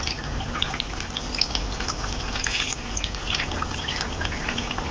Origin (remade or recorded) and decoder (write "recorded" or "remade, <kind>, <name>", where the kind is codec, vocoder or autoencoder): recorded